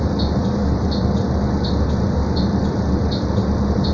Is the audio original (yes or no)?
yes